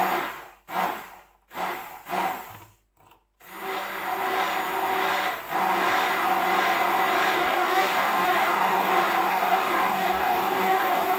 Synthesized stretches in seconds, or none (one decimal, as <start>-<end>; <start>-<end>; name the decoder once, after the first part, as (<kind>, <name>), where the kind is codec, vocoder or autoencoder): 7.3-8.9 (codec, DAC); 9.3-11.2